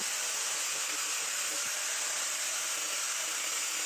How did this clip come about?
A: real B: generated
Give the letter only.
A